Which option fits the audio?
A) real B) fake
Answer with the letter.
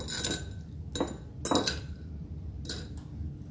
A